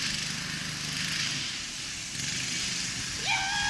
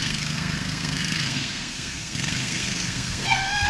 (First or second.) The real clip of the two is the first